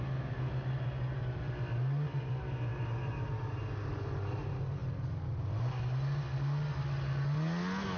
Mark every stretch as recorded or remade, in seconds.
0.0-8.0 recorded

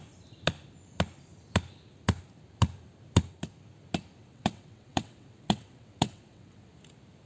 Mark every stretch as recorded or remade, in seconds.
0.0-4.2 recorded; 4.2-6.7 remade; 6.7-7.3 recorded

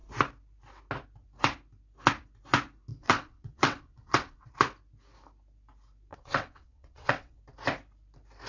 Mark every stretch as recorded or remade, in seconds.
0.0-2.9 recorded; 2.9-4.5 remade; 4.5-6.1 recorded; 6.1-7.4 remade; 7.4-8.5 recorded

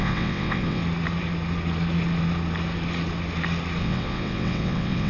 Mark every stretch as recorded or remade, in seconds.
0.0-0.8 remade; 0.8-3.8 recorded; 3.8-5.1 remade

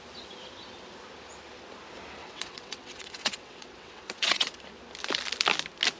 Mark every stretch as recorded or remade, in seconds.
0.0-2.2 recorded; 2.2-4.6 remade; 4.6-6.0 recorded

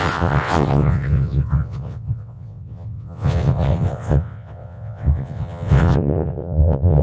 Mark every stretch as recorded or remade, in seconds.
0.0-7.0 remade